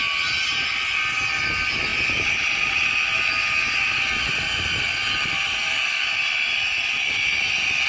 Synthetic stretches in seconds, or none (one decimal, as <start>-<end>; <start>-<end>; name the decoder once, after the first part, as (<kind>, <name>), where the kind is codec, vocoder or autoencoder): none